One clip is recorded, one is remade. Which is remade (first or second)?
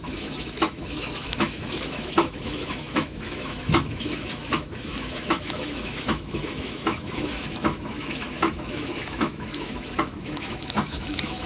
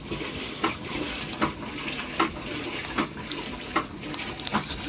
first